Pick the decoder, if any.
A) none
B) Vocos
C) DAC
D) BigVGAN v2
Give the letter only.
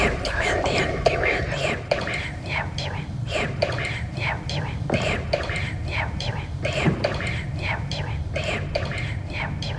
D